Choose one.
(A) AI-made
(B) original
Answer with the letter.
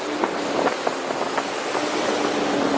B